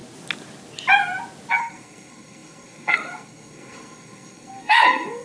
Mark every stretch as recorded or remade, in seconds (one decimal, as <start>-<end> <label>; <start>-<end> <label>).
0.0-1.5 recorded; 1.5-5.2 remade